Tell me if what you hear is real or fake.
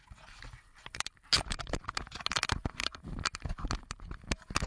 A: real